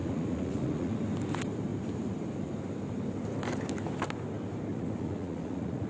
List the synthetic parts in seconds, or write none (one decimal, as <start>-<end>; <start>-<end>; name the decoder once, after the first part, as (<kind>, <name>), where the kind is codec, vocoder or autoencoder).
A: 0.0-1.0 (vocoder, Vocos); 4.7-5.9